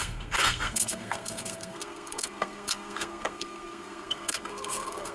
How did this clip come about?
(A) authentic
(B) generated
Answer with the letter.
B